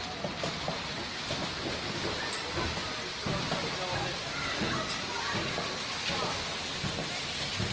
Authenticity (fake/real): real